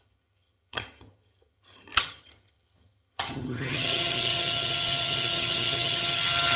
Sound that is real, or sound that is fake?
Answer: fake